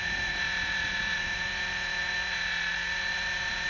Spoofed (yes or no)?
yes